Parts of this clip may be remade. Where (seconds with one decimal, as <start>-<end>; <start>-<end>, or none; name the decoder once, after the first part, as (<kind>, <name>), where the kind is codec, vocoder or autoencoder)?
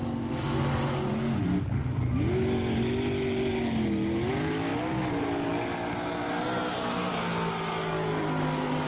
none